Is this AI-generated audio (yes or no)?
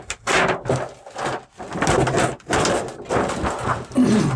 no